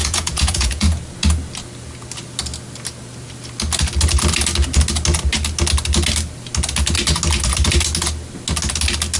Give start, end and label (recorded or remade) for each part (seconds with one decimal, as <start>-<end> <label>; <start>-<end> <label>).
0.0-1.0 remade; 1.0-9.2 recorded